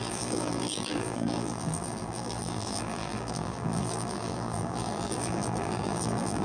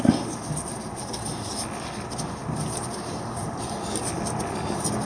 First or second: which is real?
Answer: second